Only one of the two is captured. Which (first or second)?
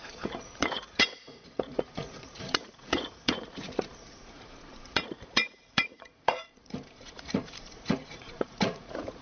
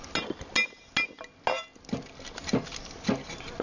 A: second